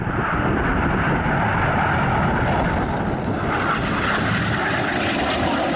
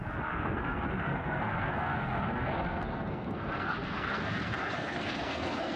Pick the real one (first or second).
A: first